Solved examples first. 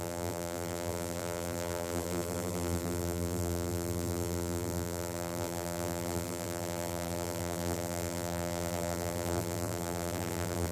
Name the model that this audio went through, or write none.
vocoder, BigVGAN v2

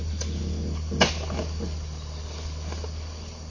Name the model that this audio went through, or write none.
none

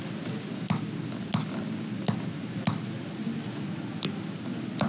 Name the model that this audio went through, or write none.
none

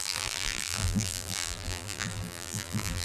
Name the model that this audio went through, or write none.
vocoder, BigVGAN v2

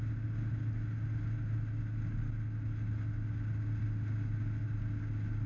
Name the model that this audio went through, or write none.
none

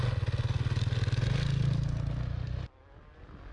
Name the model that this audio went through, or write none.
none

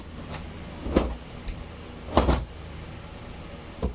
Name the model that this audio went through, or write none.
vocoder, BigVGAN v2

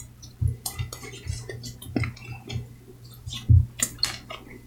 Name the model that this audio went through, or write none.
none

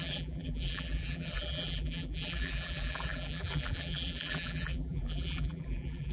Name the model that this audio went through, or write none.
vocoder, BigVGAN v2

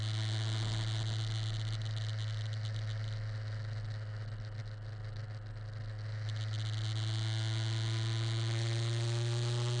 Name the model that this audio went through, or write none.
none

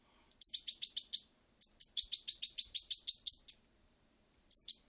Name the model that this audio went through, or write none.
none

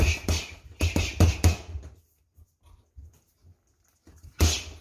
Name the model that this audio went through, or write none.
none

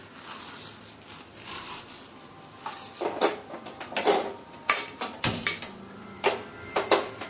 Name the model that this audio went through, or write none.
vocoder, BigVGAN v2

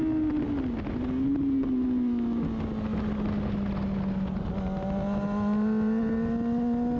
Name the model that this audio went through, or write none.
none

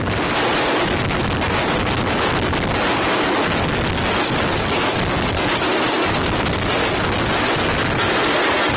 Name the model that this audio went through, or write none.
none